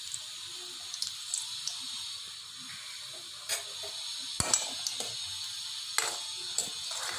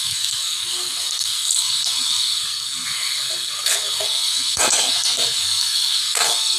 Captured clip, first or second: first